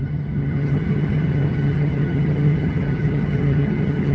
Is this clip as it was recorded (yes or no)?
no